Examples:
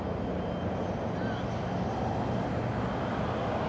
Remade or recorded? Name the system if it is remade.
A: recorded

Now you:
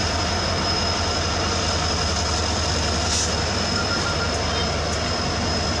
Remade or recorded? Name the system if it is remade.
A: recorded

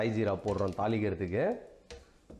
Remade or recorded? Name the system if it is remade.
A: recorded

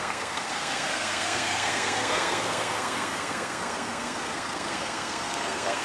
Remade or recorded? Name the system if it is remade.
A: remade, codec, SNAC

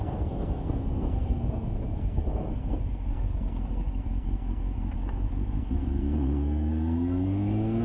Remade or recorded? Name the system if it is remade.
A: remade, codec, SNAC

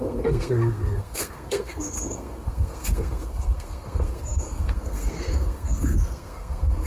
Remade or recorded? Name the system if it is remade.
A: remade, codec, SNAC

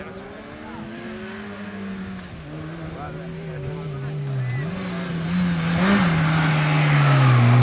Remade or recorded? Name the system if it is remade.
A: recorded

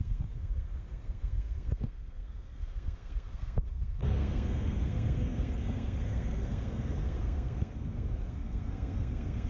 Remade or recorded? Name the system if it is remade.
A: remade, codec, SNAC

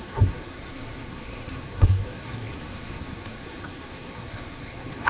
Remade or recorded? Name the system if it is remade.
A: remade, codec, SNAC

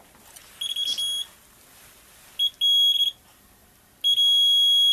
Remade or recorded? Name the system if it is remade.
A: recorded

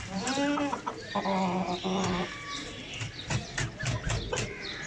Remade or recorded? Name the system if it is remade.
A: recorded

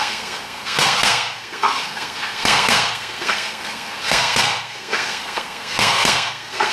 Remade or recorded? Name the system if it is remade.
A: remade, codec, SNAC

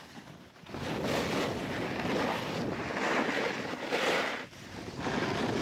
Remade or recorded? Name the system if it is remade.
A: recorded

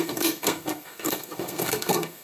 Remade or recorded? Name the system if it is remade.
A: remade, codec, SNAC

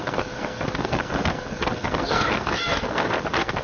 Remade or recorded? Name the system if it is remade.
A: remade, codec, SNAC